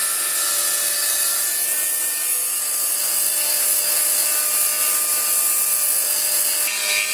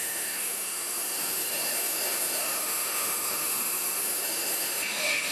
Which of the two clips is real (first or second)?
first